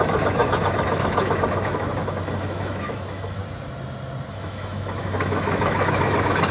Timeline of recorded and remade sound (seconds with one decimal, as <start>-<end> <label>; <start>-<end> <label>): 0.0-3.4 remade; 3.4-4.3 recorded; 4.3-6.5 remade

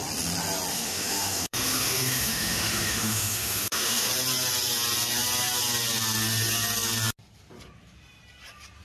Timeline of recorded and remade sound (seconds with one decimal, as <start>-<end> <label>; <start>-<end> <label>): 0.0-0.7 recorded; 0.7-4.1 remade; 4.1-8.8 recorded

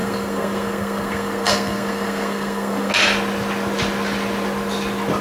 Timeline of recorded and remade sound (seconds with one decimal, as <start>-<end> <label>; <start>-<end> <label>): 0.0-2.9 remade; 2.9-5.2 recorded